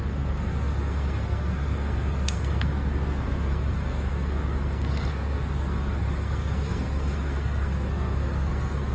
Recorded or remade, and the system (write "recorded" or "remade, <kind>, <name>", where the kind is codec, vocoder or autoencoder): remade, codec, SNAC